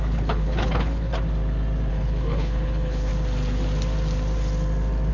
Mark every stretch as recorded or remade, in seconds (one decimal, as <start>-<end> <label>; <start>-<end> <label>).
0.0-1.1 remade; 1.1-1.9 recorded; 1.9-3.1 remade; 3.1-5.1 recorded